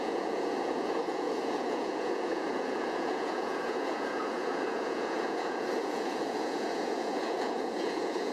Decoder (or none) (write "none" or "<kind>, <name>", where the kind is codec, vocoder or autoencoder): vocoder, Vocos